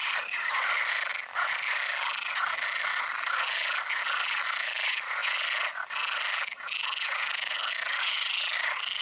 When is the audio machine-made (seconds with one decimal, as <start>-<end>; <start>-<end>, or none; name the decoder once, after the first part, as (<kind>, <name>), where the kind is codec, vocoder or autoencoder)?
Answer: 0.0-1.1 (vocoder, BigVGAN v2); 4.4-5.2; 7.7-9.0